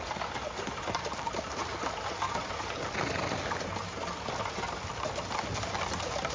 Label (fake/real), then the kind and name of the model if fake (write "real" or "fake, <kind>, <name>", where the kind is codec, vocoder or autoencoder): real